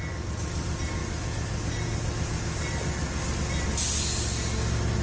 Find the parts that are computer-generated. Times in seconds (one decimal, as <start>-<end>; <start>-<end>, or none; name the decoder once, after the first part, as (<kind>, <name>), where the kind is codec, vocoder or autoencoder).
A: none

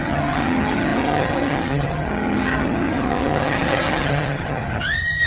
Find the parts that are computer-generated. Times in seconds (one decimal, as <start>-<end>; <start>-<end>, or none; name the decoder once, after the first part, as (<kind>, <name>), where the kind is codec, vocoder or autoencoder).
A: 0.0-5.3 (vocoder, HiFi-GAN)

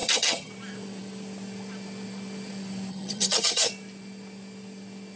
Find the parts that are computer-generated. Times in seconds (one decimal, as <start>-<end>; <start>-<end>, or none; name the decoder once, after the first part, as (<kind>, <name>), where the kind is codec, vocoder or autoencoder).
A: 0.0-0.5 (vocoder, HiFi-GAN); 2.9-3.7

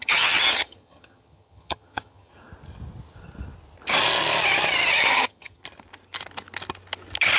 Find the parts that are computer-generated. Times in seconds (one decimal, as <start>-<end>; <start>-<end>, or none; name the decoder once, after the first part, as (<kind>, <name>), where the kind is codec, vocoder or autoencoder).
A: 0.0-2.3 (vocoder, HiFi-GAN); 4.9-5.6

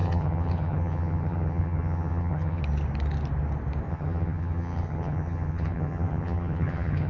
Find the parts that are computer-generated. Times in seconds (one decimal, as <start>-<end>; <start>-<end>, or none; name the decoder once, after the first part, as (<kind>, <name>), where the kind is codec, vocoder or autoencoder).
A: 0.0-2.6 (vocoder, HiFi-GAN); 3.9-7.1

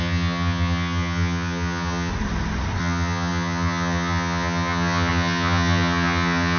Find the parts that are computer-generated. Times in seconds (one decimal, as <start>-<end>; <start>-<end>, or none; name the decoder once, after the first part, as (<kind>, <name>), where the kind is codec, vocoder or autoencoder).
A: 0.0-2.1 (vocoder, HiFi-GAN); 2.8-6.6